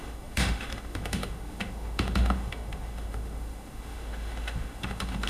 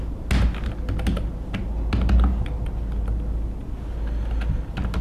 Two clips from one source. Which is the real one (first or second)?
second